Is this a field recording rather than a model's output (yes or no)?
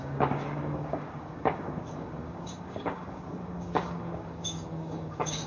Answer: no